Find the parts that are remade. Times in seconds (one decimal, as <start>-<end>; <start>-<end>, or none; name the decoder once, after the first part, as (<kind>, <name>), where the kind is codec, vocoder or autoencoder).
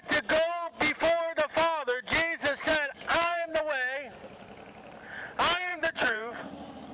3.1-3.6 (vocoder, Vocos); 5.7-6.4